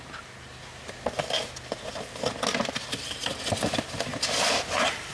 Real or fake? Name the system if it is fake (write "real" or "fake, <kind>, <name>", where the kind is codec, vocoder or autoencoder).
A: real